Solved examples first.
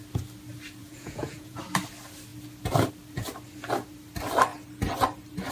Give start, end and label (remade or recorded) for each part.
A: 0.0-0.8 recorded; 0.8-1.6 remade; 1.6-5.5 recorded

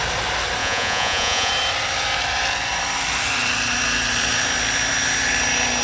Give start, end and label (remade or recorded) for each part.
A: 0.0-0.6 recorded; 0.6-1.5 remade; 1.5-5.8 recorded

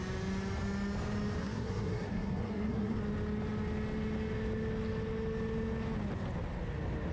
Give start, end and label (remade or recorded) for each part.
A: 0.0-1.4 recorded; 1.4-3.0 remade; 3.0-7.1 recorded

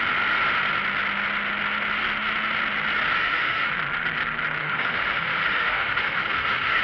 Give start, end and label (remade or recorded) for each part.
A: 0.0-3.2 recorded; 3.2-3.7 remade; 3.7-4.6 recorded; 4.6-6.8 remade

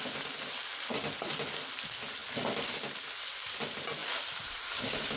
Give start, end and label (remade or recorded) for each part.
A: 0.0-4.0 recorded; 4.0-5.2 remade

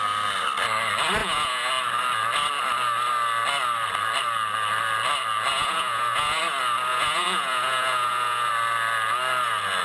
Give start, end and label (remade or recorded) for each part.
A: 0.0-1.2 recorded; 1.2-1.7 remade; 1.7-5.5 recorded; 5.5-6.4 remade; 6.4-6.9 recorded; 6.9-8.5 remade; 8.5-9.8 recorded